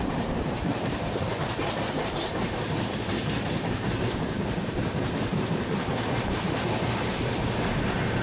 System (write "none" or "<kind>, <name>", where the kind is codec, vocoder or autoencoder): vocoder, BigVGAN v2